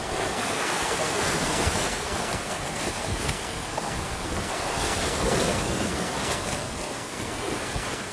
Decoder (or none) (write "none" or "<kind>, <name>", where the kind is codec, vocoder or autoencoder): codec, SNAC